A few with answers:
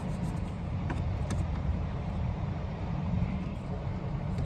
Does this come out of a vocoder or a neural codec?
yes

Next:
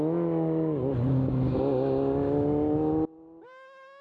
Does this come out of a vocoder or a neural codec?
no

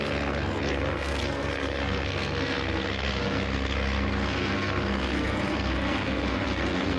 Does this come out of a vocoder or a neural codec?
yes